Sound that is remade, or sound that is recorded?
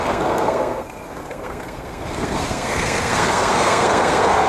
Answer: remade